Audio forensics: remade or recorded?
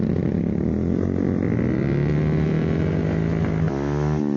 recorded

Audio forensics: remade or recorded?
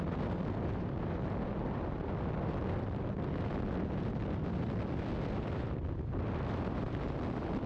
recorded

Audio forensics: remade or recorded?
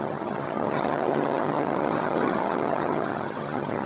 remade